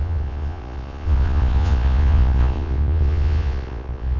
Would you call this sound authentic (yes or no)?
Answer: no